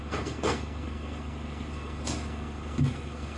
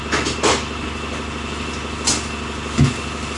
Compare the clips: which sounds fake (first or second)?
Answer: first